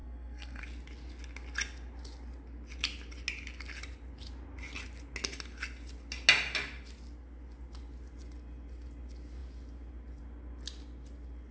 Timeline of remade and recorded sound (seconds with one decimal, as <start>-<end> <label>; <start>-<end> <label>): 0.0-0.6 remade; 0.6-11.5 recorded